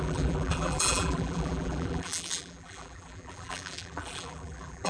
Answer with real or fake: fake